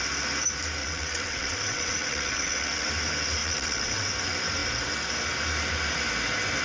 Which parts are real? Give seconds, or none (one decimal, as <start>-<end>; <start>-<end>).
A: 0.0-0.8; 2.9-3.4; 4.1-6.6